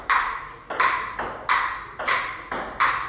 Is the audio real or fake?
real